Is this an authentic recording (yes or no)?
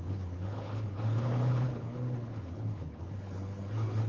no